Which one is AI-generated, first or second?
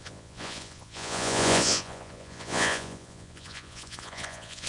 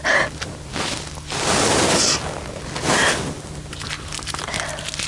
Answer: first